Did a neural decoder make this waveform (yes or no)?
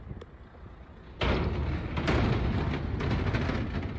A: no